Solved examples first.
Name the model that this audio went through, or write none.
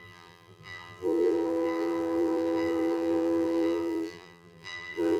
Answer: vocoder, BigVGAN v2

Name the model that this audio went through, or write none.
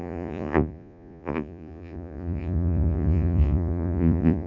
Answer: vocoder, Vocos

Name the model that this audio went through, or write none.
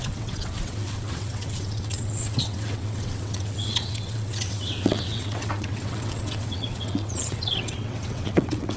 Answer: vocoder, WaveNeXt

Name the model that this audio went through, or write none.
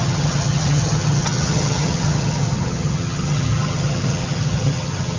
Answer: vocoder, HiFi-GAN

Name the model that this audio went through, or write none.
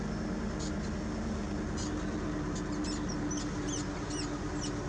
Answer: none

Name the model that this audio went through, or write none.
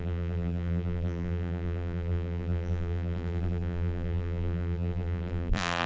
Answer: vocoder, BigVGAN v2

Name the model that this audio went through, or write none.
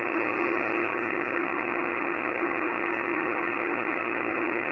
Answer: vocoder, HiFi-GAN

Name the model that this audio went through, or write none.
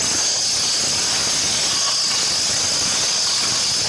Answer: none